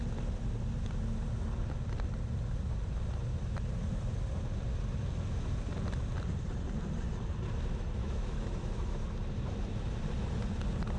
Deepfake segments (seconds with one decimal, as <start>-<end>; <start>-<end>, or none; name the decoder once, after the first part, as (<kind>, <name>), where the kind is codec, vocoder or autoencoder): 8.0-9.0 (autoencoder, DAC-VAE)